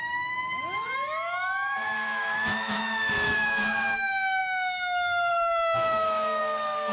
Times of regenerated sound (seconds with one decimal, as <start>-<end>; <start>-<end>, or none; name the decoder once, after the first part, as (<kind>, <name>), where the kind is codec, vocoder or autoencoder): 0.0-6.9 (autoencoder, DAC-VAE)